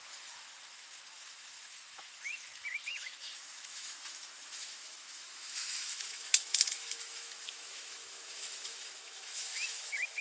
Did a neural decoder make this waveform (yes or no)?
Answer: yes